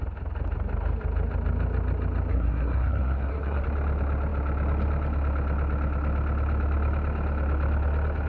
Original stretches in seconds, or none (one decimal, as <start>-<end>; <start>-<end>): 0.0-2.3; 3.6-8.3